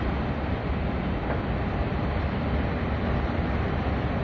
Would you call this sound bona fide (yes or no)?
yes